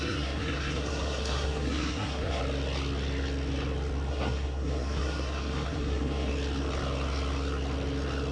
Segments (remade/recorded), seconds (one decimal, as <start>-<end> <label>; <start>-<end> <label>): 0.0-2.4 remade; 2.4-4.1 recorded; 4.1-6.3 remade; 6.3-8.3 recorded